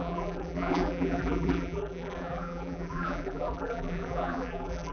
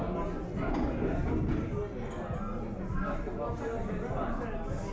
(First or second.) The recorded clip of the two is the second